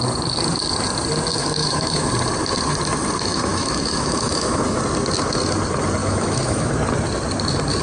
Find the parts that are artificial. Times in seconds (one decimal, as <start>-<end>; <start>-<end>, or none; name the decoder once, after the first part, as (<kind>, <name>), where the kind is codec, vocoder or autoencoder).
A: 1.4-2.1 (autoencoder, DAC-VAE); 3.3-4.8; 6.0-6.7